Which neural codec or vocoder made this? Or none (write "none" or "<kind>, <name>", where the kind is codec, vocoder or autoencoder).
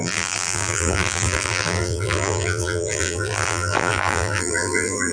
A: vocoder, BigVGAN v2